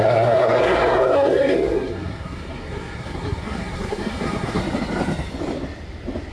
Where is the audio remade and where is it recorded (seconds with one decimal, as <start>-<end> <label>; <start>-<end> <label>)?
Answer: 0.0-4.6 remade; 4.6-6.3 recorded